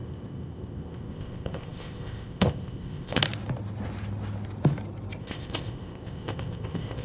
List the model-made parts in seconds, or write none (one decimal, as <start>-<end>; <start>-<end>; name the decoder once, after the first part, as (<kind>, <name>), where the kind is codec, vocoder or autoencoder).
0.0-3.2 (codec, ZipCodec); 5.2-7.0